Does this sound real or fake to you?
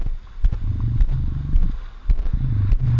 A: real